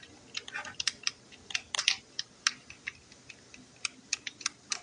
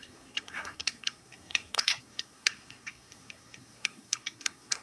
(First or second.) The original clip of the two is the first